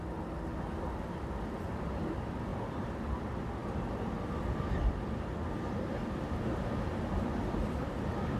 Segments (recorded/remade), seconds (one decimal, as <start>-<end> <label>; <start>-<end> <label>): 0.0-2.5 recorded; 2.5-3.2 remade; 3.2-8.4 recorded